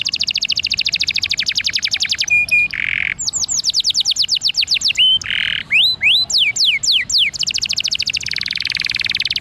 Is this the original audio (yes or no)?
yes